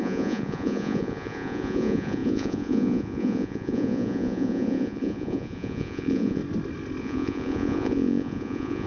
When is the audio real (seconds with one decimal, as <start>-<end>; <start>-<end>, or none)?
6.4-7.0

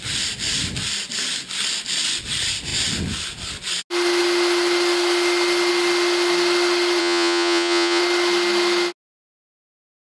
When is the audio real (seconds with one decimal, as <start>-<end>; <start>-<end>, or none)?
0.0-7.0; 8.0-10.0